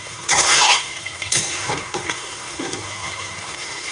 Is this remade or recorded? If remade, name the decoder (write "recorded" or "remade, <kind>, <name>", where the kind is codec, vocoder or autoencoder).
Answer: remade, codec, SNAC